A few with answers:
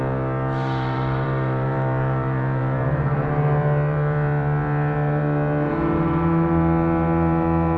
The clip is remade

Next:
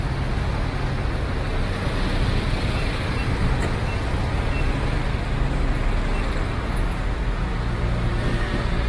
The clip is recorded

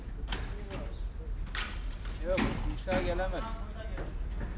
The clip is recorded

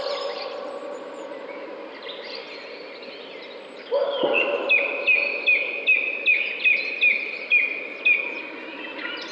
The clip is recorded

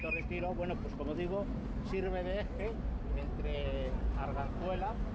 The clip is recorded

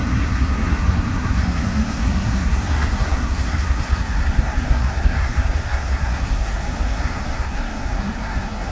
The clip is remade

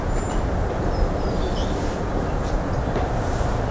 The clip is recorded